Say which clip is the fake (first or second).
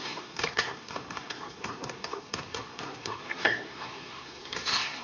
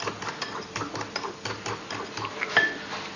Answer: first